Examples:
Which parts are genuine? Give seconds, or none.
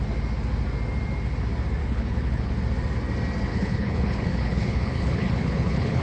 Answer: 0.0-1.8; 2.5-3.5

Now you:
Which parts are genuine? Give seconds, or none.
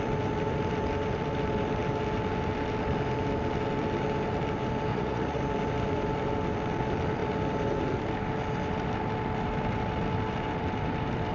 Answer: 0.0-4.9; 5.4-11.3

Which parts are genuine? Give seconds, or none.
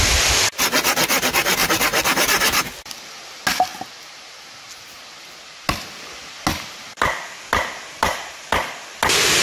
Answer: 0.0-1.9; 2.6-9.4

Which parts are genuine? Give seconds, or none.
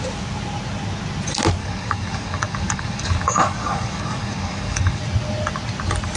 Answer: 0.0-1.6; 5.0-6.2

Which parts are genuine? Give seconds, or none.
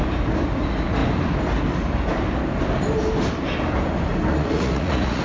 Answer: 0.0-4.3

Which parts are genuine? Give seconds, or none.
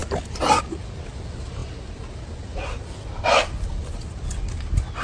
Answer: 0.0-5.0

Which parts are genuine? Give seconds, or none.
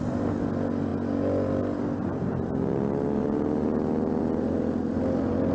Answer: 0.0-5.5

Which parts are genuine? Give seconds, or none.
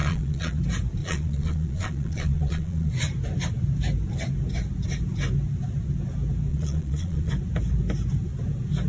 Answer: 0.6-1.0; 2.9-6.5; 7.3-8.9